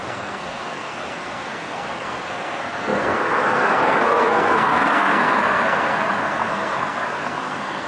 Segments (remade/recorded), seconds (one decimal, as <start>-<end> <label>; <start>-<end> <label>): 0.0-7.9 remade